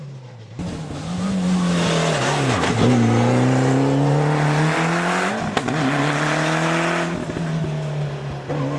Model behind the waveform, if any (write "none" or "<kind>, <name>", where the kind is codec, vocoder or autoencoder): none